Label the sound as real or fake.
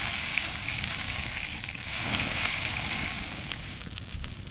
fake